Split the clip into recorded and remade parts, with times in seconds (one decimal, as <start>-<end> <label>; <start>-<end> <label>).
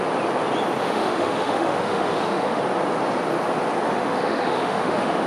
0.0-0.8 recorded; 0.8-2.6 remade; 2.6-3.9 recorded; 3.9-5.3 remade